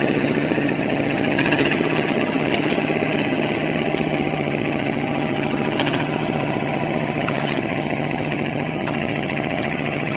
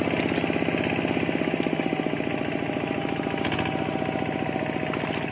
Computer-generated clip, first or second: first